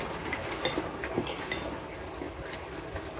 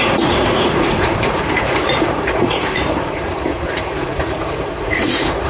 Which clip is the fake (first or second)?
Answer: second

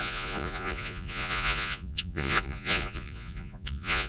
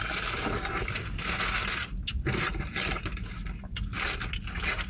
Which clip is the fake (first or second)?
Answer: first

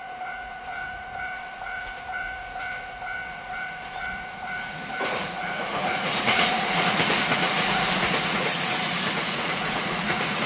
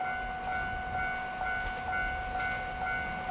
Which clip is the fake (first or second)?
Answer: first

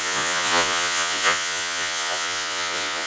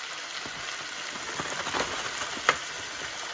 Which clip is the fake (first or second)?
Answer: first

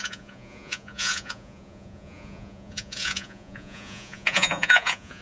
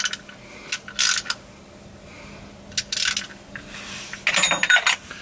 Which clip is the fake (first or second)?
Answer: first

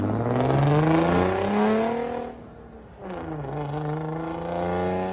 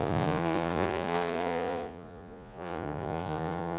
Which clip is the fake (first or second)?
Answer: second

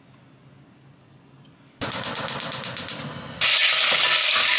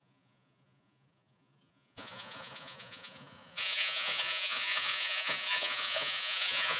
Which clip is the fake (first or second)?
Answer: second